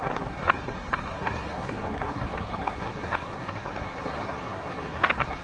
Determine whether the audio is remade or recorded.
remade